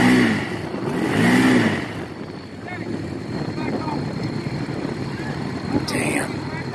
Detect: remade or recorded recorded